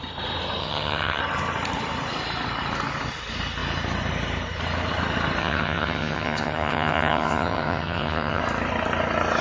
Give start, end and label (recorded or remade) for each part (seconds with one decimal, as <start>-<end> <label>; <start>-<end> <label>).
0.0-0.6 recorded; 0.6-1.2 remade; 1.2-5.4 recorded; 5.4-8.4 remade; 8.4-9.4 recorded